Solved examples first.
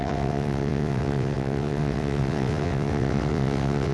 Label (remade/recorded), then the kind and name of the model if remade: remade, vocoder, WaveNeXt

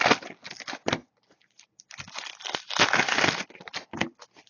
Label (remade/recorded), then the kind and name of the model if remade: recorded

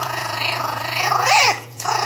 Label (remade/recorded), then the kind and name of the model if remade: remade, vocoder, Vocos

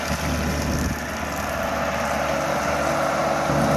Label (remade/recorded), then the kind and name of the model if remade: recorded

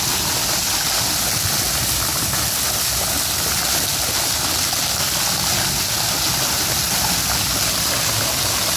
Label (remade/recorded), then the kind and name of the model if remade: recorded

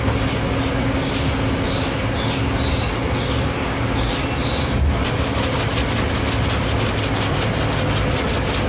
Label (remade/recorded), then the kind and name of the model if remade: recorded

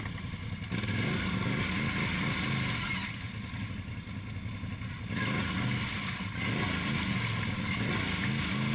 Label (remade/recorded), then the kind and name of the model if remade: recorded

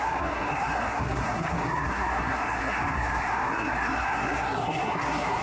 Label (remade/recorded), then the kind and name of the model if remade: remade, codec, SNAC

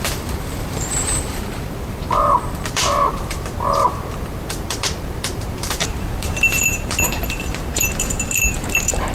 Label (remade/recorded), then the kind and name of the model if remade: remade, vocoder, BigVGAN v2